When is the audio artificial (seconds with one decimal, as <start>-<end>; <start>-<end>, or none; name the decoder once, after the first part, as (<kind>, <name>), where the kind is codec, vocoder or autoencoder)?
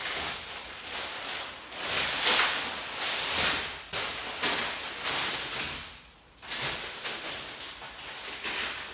6.8-7.3 (autoencoder, DAC-VAE)